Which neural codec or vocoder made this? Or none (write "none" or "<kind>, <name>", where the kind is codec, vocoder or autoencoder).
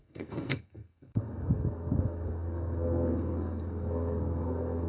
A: codec, SNAC